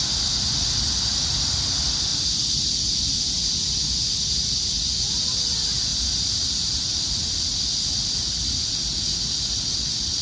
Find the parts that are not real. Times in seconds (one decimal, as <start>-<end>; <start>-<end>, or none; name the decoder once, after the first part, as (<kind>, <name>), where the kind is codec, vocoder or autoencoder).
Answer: 2.1-2.7 (vocoder, BigVGAN v2); 5.9-7.0

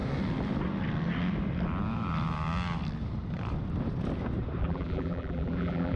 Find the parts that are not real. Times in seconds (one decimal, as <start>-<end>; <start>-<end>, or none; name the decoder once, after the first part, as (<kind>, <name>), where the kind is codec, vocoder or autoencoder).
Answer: 4.6-6.0 (vocoder, BigVGAN v2)

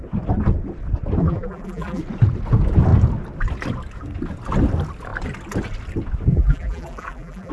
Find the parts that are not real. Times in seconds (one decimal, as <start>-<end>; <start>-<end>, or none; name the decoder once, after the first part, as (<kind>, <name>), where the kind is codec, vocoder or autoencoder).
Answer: 1.2-2.0 (vocoder, BigVGAN v2); 6.3-7.5

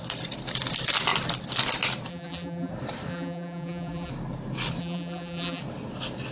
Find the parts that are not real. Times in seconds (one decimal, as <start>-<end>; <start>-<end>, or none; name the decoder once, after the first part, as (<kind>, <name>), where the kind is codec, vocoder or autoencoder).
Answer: 2.1-2.7 (vocoder, BigVGAN v2); 3.1-4.1; 4.8-5.6

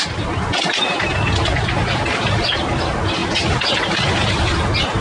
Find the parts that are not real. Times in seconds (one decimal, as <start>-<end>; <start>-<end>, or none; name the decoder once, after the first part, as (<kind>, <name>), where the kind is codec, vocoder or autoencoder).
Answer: none

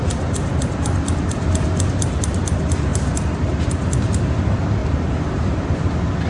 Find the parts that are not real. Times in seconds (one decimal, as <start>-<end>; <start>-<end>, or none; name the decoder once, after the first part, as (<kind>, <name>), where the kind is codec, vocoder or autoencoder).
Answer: 4.8-5.7 (vocoder, BigVGAN v2)

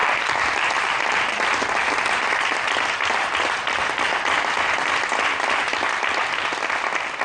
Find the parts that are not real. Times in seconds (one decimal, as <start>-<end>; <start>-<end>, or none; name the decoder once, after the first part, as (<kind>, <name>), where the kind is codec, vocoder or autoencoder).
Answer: 0.0-4.2 (vocoder, BigVGAN v2)